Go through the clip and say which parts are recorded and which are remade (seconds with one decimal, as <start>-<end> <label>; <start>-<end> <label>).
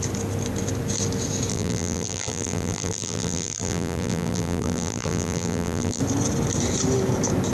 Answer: 0.0-1.5 recorded; 1.5-6.0 remade; 6.0-7.5 recorded